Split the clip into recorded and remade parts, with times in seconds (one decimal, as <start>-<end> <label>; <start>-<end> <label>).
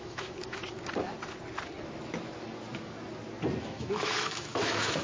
0.0-0.6 remade; 0.6-3.6 recorded; 3.6-5.0 remade